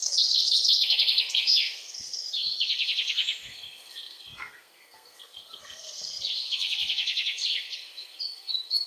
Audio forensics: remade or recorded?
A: remade